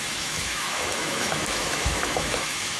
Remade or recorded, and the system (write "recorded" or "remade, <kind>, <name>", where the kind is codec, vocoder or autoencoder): remade, autoencoder, DAC-VAE